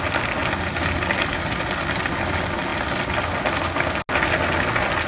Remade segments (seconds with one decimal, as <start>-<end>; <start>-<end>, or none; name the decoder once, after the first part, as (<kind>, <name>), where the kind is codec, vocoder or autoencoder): none